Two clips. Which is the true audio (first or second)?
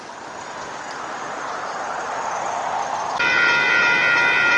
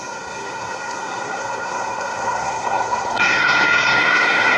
first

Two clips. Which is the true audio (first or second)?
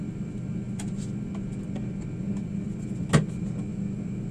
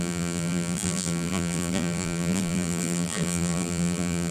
first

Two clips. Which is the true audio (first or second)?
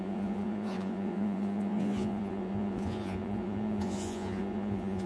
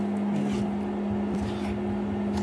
second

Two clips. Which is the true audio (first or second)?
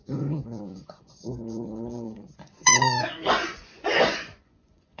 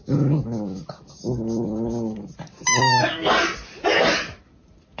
second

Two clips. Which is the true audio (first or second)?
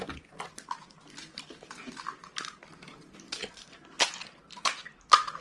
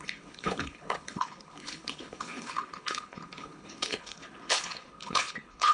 first